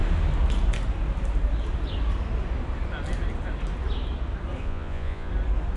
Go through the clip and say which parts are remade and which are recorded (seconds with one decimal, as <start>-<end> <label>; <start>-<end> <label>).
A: 0.0-4.6 recorded; 4.6-5.3 remade; 5.3-5.8 recorded